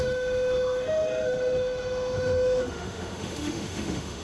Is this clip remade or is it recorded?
remade